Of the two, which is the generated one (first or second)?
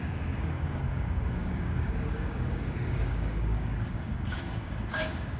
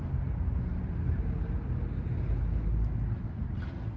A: first